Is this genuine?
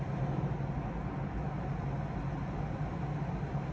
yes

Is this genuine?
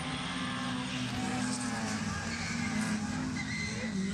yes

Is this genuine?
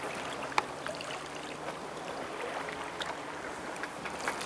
yes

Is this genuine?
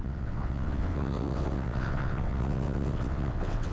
no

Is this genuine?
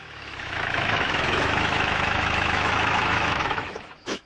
no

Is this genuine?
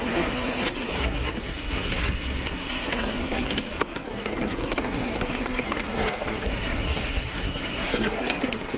no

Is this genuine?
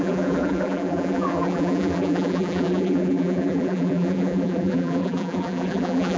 no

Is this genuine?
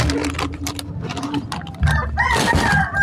yes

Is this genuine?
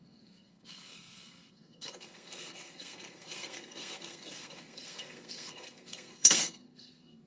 no